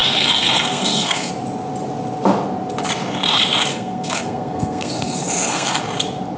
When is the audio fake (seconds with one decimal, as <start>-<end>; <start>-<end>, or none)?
0.0-1.3; 3.7-5.8